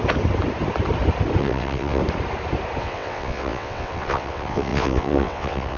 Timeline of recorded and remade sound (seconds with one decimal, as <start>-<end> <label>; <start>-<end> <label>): 0.0-1.4 recorded; 1.4-2.0 remade; 2.0-2.8 recorded; 2.8-5.8 remade